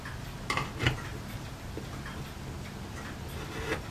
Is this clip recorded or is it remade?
recorded